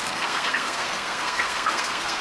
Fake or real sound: fake